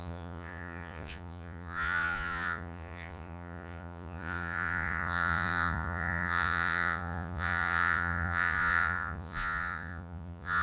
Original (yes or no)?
no